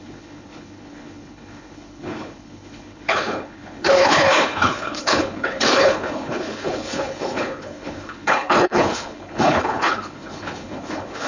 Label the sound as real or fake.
fake